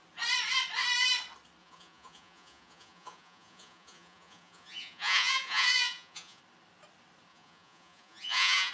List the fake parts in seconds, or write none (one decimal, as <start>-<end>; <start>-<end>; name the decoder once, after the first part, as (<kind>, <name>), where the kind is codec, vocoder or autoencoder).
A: 1.6-6.4 (vocoder, Vocos); 7.3-8.7